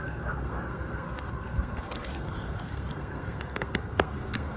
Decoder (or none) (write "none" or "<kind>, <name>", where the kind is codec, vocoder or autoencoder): codec, SNAC